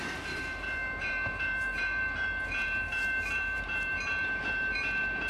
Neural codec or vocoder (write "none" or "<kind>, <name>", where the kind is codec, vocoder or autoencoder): vocoder, BigVGAN v2